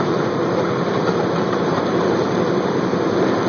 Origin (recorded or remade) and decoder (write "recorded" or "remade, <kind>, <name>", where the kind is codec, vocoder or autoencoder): remade, vocoder, BigVGAN v2